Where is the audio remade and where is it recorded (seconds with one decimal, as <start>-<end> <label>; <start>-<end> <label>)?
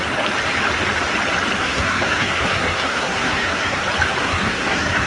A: 0.0-1.6 recorded; 1.6-3.8 remade; 3.8-4.2 recorded; 4.2-5.1 remade